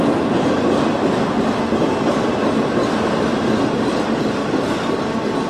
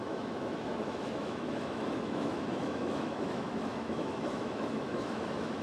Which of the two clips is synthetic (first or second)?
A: second